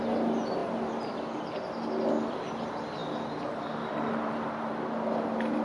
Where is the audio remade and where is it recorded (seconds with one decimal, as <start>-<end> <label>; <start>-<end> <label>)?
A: 0.0-5.6 recorded

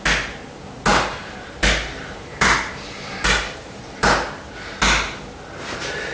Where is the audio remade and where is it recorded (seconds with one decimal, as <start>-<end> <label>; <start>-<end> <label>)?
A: 0.0-0.9 recorded; 0.9-4.1 remade; 4.1-6.1 recorded